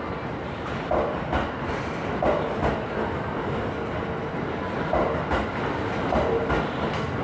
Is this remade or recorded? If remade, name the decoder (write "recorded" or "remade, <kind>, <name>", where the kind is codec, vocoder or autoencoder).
recorded